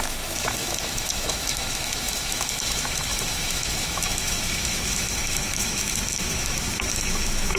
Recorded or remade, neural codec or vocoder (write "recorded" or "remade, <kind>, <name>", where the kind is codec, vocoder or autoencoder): remade, autoencoder, DAC-VAE